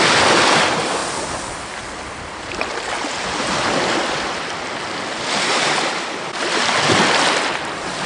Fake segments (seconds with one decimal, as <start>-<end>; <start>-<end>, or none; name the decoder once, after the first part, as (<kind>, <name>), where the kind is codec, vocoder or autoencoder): none